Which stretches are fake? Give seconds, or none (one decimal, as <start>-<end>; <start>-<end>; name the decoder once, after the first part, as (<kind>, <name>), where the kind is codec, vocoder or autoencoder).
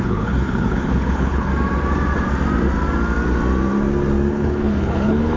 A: 0.0-1.5 (codec, HILCodec); 4.3-5.4